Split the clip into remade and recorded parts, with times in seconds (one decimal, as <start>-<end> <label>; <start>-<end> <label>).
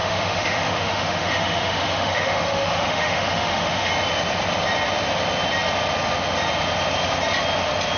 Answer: 0.0-3.9 remade; 3.9-8.0 recorded